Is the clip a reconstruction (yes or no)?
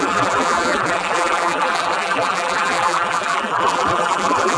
yes